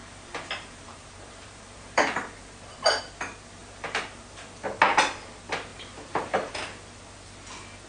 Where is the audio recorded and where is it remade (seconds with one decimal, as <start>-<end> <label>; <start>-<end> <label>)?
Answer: 0.0-3.0 remade; 3.0-3.6 recorded; 3.6-4.5 remade; 4.5-5.7 recorded; 5.7-6.5 remade; 6.5-7.9 recorded